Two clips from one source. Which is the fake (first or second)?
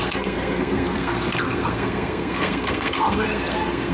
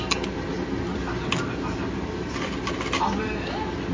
first